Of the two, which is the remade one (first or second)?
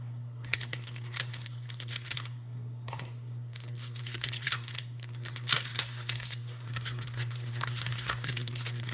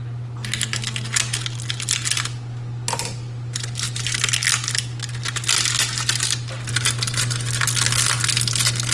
first